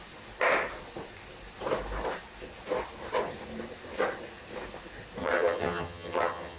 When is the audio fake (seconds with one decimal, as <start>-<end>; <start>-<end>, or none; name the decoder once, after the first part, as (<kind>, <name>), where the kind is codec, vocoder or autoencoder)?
5.2-6.6 (vocoder, HiFi-GAN)

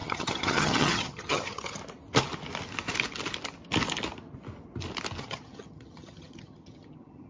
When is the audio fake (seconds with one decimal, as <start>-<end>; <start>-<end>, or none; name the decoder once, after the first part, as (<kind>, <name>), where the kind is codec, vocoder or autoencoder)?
0.0-1.8 (vocoder, HiFi-GAN); 5.2-7.3

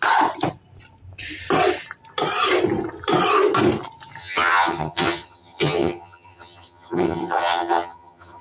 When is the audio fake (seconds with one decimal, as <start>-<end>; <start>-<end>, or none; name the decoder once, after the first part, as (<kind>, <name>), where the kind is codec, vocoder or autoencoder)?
4.2-8.4 (vocoder, HiFi-GAN)

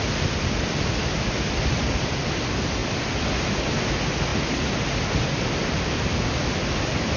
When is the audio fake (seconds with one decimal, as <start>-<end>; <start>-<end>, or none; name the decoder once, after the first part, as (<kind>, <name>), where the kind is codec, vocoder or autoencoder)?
none

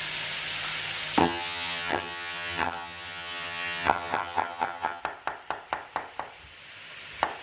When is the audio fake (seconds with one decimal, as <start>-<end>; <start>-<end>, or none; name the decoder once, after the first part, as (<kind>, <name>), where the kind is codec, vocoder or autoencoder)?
1.2-5.0 (vocoder, HiFi-GAN)